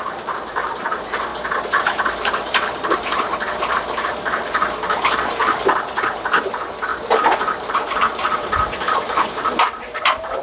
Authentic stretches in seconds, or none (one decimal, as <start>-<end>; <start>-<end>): 1.3-1.8; 5.4-6.0